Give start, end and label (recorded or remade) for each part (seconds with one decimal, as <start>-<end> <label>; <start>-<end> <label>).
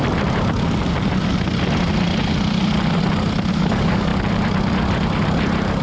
0.0-3.5 recorded; 3.5-4.1 remade; 4.1-5.8 recorded